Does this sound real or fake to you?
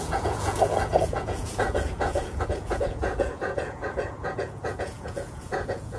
fake